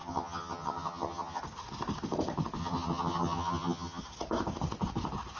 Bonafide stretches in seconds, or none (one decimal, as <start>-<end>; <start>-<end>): 1.4-2.6; 4.0-5.4